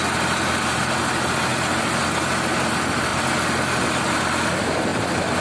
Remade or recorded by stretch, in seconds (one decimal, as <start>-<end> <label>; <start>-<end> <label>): 0.0-5.4 recorded